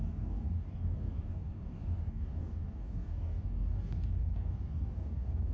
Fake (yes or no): yes